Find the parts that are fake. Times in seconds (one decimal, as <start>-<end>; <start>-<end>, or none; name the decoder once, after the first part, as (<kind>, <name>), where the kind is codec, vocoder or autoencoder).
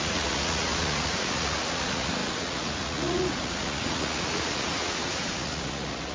0.0-6.1 (vocoder, Vocos)